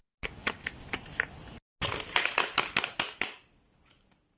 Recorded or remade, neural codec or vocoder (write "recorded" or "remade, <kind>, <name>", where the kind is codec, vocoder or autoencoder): recorded